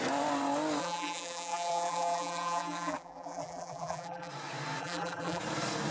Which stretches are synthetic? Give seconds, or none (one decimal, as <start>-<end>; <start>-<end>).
0.8-4.3; 4.8-5.4